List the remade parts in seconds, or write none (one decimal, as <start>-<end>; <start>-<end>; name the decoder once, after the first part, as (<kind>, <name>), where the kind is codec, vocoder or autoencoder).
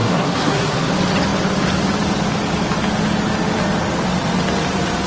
0.0-0.9 (codec, SNAC)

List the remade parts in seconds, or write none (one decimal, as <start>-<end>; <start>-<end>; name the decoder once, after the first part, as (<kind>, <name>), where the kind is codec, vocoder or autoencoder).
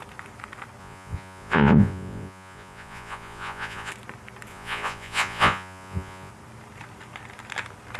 0.8-3.9 (vocoder, Vocos); 4.5-6.3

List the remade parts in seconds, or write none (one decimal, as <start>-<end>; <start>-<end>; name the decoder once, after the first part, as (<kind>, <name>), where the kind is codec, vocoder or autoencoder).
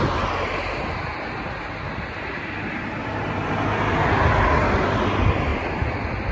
5.5-6.3 (vocoder, BigVGAN v2)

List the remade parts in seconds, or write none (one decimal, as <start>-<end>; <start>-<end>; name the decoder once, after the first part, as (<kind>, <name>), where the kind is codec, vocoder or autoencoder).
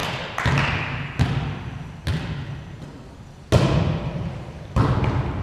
none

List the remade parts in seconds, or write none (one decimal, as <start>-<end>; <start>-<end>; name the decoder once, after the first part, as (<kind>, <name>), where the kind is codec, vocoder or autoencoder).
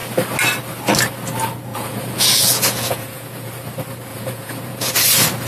1.7-3.5 (vocoder, Vocos); 4.1-4.9